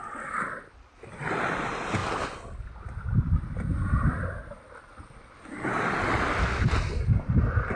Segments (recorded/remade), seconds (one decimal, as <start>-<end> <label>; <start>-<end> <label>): 0.0-7.8 recorded